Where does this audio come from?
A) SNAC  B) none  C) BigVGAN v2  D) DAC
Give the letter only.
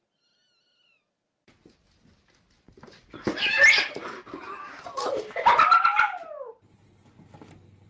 B